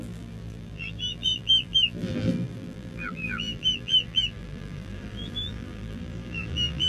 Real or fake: fake